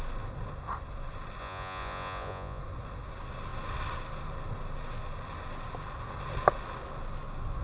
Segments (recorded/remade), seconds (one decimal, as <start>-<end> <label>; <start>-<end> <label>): 0.0-1.4 recorded; 1.4-2.6 remade; 2.6-7.6 recorded